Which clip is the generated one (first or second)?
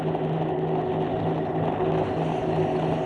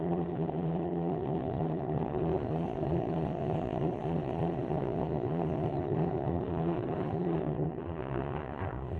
second